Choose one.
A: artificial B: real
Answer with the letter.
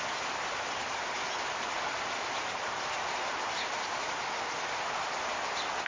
B